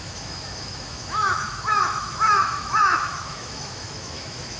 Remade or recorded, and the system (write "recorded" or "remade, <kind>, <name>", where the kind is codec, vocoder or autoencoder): remade, autoencoder, DAC-VAE